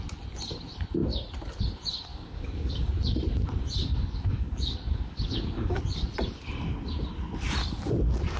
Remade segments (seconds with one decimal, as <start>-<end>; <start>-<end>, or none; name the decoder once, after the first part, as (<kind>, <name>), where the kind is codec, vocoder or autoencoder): 2.1-2.9 (codec, DAC); 3.8-5.8